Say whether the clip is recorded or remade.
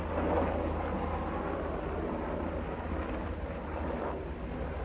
recorded